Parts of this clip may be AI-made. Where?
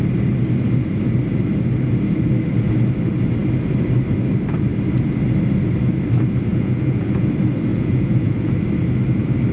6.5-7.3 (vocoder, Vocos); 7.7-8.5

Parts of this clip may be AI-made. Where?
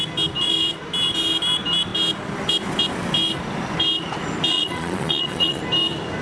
4.5-5.6 (vocoder, Vocos)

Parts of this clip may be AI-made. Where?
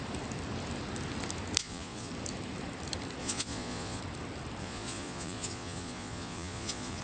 1.6-2.1 (vocoder, Vocos); 3.2-4.0; 4.6-7.0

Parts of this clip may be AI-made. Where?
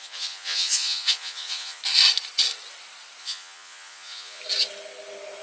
0.0-1.8 (vocoder, Vocos); 3.2-4.4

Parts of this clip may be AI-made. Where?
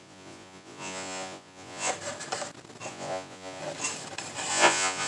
0.0-1.9 (vocoder, Vocos); 2.9-3.6; 4.5-5.1